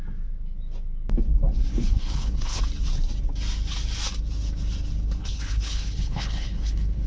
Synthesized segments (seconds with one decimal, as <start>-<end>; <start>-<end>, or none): 1.7-2.6; 5.2-7.1